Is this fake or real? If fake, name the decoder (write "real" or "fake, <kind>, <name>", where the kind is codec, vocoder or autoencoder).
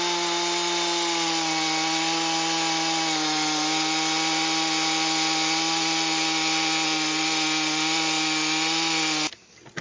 real